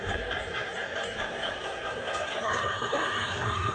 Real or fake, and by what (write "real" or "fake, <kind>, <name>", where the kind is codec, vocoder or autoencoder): fake, codec, SNAC